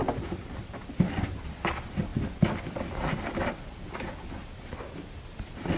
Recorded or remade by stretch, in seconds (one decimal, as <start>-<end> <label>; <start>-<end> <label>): 0.0-5.8 recorded